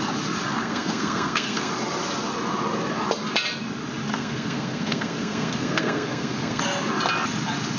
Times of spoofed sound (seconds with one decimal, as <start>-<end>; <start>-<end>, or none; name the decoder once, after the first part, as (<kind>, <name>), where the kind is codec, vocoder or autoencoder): 0.5-1.7 (codec, SNAC); 4.1-6.6